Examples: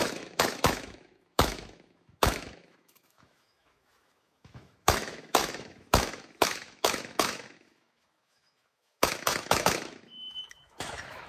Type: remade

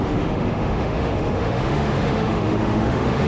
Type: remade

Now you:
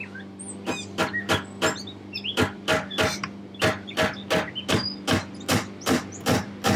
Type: recorded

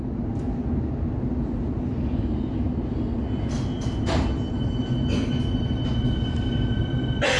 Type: recorded